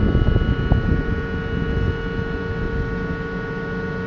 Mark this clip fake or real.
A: real